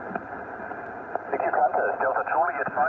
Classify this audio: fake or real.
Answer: fake